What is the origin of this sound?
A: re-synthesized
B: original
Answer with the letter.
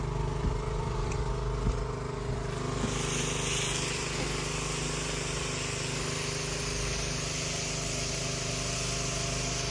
B